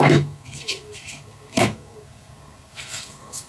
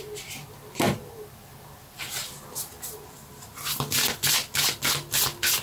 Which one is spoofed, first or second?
first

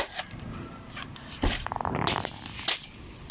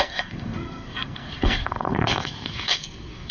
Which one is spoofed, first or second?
second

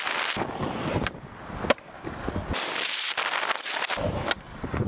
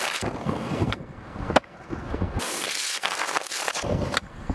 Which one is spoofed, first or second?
second